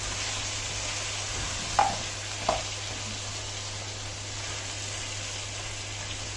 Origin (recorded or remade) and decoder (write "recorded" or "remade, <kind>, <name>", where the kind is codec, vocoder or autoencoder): recorded